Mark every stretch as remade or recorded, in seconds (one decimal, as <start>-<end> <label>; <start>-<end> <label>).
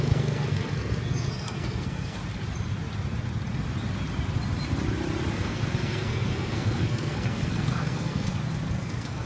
0.0-2.2 remade; 2.2-5.3 recorded; 5.3-8.3 remade; 8.3-8.8 recorded; 8.8-9.3 remade